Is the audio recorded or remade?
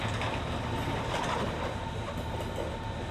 recorded